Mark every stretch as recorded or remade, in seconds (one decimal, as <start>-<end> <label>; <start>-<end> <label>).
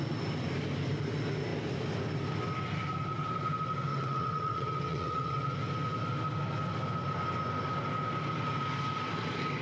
0.0-3.9 recorded; 3.9-5.5 remade; 5.5-9.6 recorded